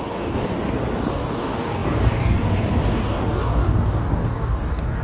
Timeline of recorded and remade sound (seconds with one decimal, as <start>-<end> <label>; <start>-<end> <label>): 0.0-0.5 remade; 0.5-1.1 recorded; 1.1-5.0 remade